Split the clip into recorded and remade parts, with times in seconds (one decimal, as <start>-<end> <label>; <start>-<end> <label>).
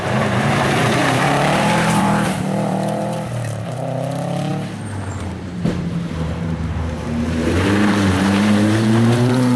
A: 0.0-4.5 remade; 4.5-5.2 recorded; 5.2-9.6 remade